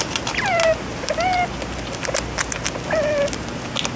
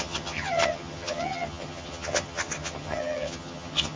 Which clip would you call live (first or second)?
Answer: first